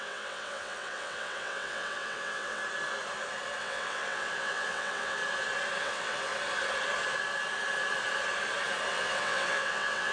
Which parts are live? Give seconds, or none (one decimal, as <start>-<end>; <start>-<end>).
2.6-3.6; 5.2-5.8; 6.3-8.9